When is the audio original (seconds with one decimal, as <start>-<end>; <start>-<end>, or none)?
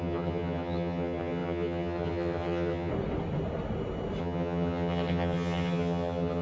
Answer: 2.9-4.2